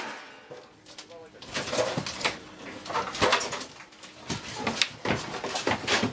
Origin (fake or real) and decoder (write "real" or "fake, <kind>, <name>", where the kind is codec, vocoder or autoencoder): real